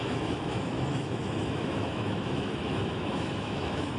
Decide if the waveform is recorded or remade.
remade